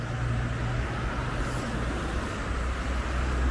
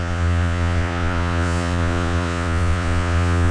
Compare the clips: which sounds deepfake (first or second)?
second